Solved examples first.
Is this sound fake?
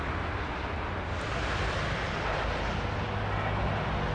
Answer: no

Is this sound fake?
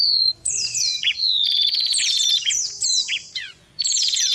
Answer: yes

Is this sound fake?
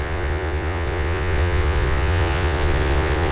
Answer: yes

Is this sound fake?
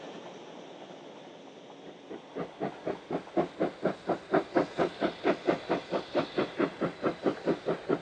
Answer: no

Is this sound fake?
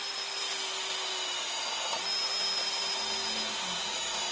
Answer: no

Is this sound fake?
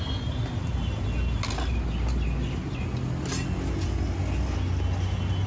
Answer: no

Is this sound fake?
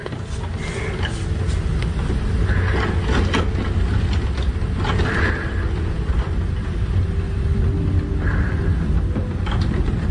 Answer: no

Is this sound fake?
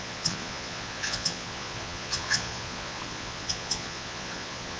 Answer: yes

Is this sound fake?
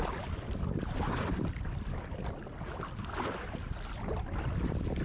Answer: no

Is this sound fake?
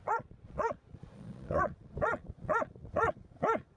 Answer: yes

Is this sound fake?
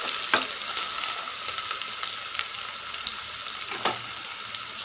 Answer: no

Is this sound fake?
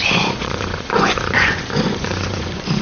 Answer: yes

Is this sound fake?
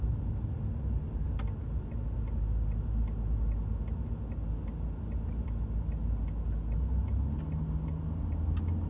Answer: no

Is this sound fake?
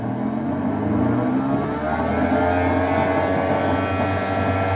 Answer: no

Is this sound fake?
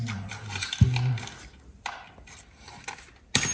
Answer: no